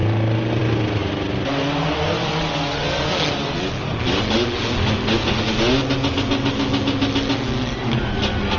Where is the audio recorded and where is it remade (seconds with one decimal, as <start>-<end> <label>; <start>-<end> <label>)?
0.0-8.6 recorded